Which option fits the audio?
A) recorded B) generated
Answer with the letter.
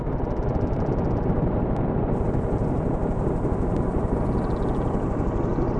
A